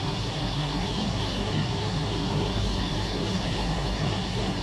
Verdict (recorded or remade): remade